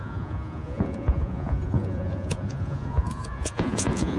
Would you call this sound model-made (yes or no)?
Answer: yes